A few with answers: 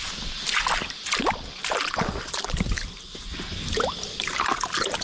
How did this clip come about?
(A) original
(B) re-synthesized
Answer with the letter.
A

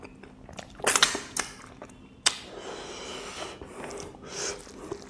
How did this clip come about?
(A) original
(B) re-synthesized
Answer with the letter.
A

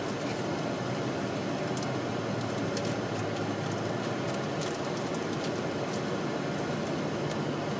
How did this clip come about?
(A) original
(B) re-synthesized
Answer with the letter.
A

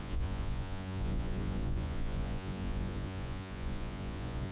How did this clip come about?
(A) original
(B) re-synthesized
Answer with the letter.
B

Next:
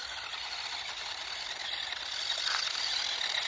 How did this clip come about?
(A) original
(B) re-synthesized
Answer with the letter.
A